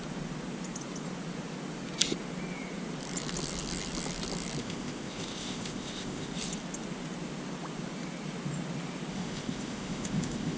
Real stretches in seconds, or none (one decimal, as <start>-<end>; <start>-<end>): 0.0-4.6; 6.3-9.1